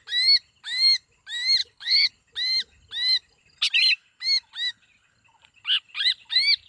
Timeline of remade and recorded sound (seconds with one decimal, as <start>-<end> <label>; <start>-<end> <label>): 0.0-1.6 recorded; 1.6-2.1 remade; 2.1-6.7 recorded